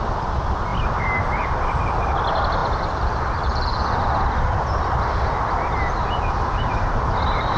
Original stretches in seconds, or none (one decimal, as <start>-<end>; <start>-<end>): 0.0-7.6